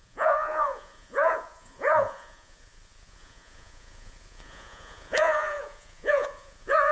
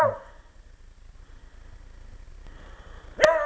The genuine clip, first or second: second